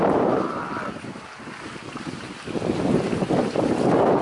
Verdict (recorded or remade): recorded